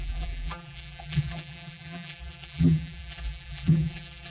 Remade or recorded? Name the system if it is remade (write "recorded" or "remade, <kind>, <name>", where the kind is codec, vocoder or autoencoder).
remade, vocoder, BigVGAN v2